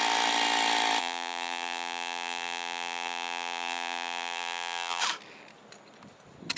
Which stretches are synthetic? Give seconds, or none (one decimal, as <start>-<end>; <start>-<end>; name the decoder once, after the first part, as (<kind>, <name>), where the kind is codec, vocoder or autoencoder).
1.0-5.0 (vocoder, BigVGAN v2)